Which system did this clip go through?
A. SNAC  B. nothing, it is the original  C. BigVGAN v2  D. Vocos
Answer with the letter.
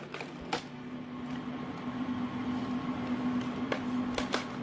B